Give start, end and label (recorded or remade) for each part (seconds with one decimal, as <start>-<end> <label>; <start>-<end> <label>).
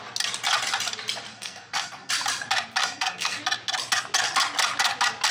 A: 0.0-1.3 recorded; 1.3-2.1 remade; 2.1-2.8 recorded; 2.8-3.4 remade; 3.4-5.3 recorded